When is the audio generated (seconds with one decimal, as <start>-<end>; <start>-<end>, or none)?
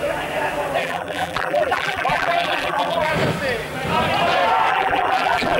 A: 0.8-3.1; 4.7-5.6